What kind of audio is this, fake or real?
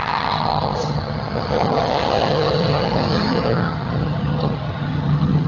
fake